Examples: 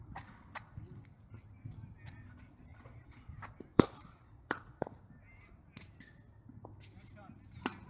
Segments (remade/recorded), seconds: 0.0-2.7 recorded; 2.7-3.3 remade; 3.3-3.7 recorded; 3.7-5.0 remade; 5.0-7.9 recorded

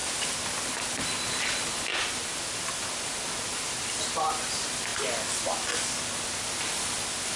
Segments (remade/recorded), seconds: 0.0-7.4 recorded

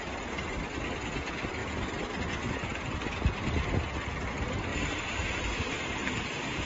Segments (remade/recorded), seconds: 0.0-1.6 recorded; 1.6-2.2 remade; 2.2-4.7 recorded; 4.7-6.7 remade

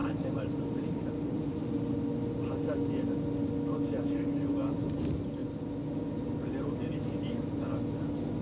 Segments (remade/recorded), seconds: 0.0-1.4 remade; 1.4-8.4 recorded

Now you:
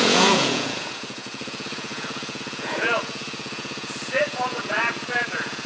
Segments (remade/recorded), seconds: 0.0-5.7 remade